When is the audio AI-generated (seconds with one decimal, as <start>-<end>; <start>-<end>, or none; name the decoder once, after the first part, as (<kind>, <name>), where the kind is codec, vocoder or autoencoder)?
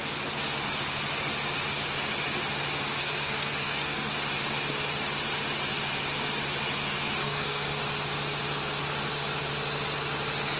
3.0-4.1 (codec, SNAC); 7.2-7.8